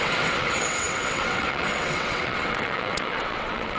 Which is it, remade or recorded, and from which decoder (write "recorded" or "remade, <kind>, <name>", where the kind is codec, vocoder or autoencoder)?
remade, vocoder, WaveNeXt